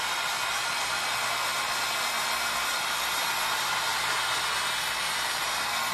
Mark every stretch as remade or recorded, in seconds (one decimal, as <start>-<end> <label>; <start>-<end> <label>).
0.0-5.9 recorded